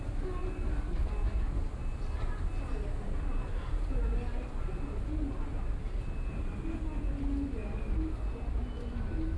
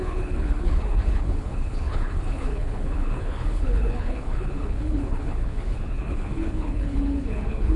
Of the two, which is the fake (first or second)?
second